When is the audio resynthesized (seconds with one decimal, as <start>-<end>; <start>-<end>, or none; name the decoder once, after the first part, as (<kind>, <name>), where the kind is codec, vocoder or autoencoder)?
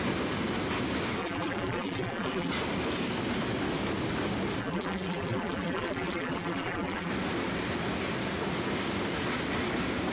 1.2-2.5 (vocoder, BigVGAN v2); 4.6-7.1